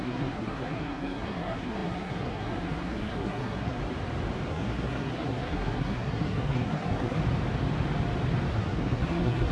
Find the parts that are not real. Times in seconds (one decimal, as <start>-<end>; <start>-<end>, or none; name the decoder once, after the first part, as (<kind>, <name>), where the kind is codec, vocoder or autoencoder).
0.0-3.8 (codec, SNAC); 4.5-7.2; 8.5-9.5